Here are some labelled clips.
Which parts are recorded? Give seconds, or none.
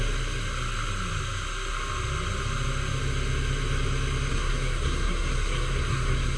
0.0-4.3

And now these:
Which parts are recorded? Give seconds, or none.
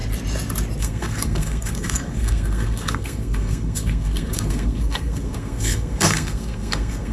0.0-0.8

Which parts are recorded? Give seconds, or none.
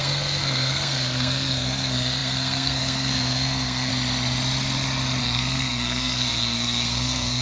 3.9-5.2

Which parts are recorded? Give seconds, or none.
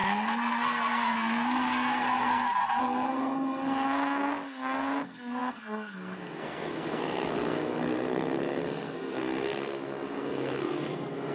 none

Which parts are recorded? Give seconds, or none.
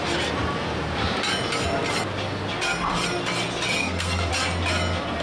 0.0-3.8; 4.3-5.2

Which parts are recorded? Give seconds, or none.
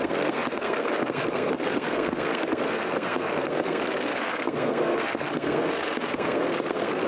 none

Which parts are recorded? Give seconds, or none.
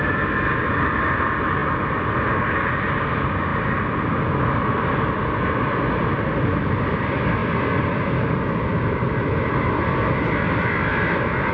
0.0-11.5